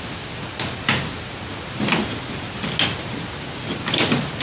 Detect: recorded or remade recorded